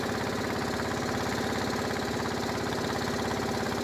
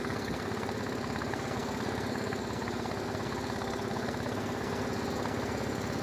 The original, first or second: first